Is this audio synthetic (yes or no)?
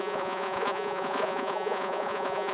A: yes